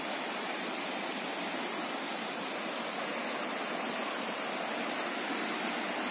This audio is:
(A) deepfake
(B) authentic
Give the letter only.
B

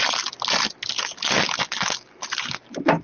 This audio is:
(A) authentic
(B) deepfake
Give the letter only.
A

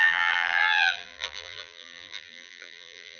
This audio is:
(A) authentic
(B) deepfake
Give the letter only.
B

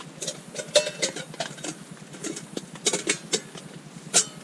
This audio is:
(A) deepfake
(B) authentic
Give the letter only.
B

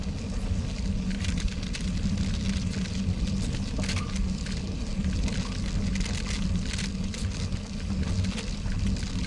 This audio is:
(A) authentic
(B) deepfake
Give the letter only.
A